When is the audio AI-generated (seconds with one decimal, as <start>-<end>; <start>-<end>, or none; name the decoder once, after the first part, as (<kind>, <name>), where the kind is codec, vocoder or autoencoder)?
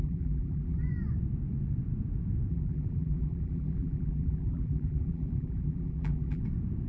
0.0-0.9 (vocoder, BigVGAN v2); 2.5-6.4